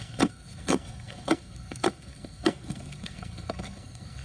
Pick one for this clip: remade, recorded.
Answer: remade